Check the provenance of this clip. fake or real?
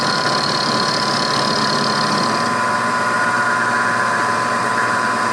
fake